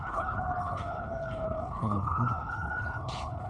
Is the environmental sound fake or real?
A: fake